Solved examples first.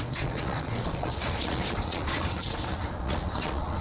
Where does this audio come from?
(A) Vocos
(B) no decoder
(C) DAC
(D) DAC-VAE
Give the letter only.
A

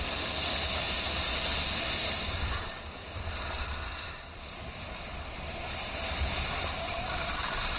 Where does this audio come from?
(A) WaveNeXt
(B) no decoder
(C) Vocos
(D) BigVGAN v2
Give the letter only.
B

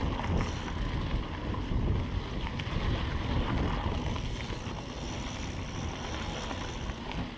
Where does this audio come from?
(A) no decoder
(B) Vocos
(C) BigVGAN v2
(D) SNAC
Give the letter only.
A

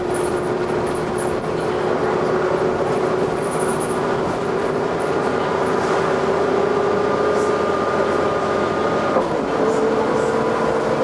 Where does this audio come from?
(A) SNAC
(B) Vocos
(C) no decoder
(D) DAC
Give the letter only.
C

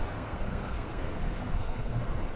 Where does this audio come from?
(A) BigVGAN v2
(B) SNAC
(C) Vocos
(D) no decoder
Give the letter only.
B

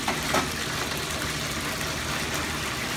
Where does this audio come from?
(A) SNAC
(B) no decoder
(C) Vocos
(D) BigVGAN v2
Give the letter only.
B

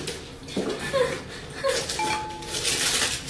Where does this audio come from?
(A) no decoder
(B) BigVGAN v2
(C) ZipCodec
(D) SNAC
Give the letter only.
A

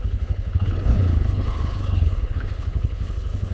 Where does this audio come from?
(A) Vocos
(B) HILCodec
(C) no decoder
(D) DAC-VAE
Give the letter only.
B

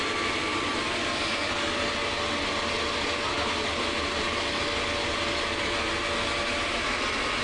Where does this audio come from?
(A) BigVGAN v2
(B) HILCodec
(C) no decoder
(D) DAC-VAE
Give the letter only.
C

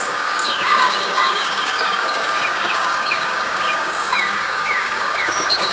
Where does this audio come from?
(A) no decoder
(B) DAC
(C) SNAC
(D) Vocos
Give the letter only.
B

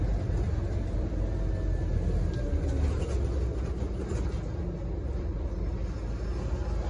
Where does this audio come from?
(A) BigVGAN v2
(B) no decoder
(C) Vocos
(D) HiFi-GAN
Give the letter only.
B